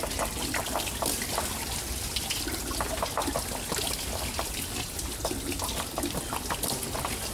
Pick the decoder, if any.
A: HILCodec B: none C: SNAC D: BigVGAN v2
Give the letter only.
B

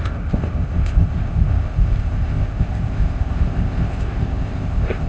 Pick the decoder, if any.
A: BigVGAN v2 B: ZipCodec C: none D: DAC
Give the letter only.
B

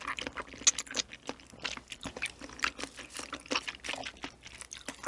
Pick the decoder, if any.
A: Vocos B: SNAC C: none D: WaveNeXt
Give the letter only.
C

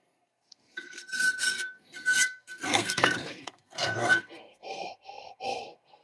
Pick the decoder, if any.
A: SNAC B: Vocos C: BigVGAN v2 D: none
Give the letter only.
A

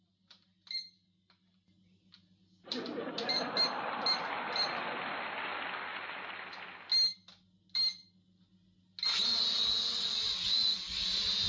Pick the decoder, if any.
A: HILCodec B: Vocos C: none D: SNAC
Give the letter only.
C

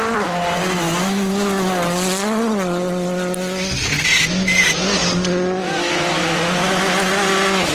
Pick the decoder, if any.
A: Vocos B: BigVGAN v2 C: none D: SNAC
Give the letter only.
C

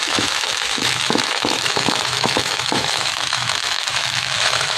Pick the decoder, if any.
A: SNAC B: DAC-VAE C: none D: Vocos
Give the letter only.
B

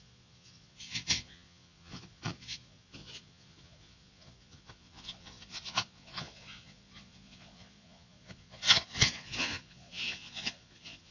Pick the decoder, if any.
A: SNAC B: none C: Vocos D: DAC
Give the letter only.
C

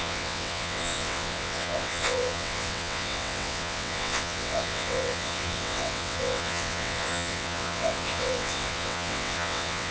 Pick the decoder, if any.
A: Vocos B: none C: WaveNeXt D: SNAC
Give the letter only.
C